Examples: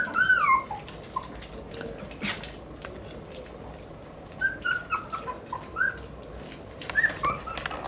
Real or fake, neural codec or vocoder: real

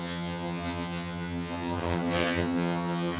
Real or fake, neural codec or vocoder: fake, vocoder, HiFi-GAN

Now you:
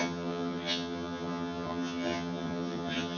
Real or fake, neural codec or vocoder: fake, vocoder, HiFi-GAN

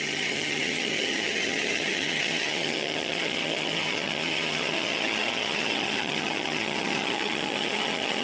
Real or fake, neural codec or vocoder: fake, vocoder, HiFi-GAN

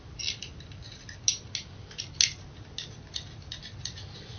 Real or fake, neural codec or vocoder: real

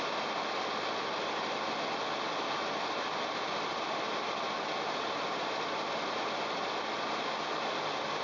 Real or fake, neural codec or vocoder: real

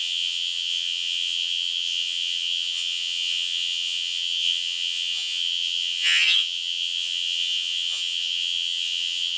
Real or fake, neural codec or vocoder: fake, vocoder, HiFi-GAN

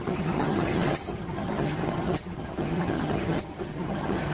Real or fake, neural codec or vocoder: fake, vocoder, HiFi-GAN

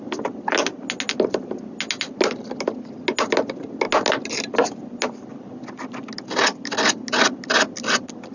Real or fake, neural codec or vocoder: real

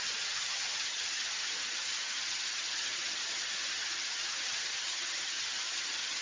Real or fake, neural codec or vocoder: fake, vocoder, HiFi-GAN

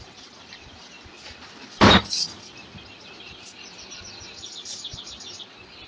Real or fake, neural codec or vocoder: real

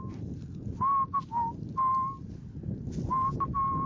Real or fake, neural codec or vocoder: real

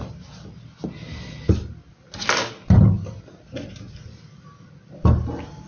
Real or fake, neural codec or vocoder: real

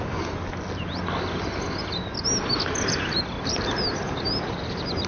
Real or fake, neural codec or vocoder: real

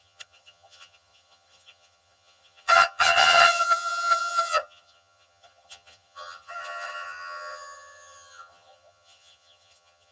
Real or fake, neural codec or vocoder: fake, vocoder, HiFi-GAN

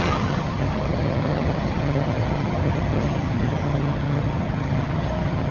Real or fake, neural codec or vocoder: fake, vocoder, HiFi-GAN